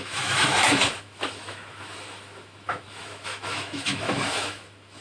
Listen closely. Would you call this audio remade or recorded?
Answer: remade